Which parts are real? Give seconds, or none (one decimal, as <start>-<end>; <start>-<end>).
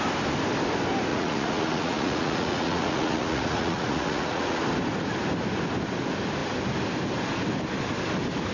0.0-1.1; 4.6-8.5